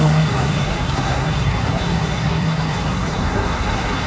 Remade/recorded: remade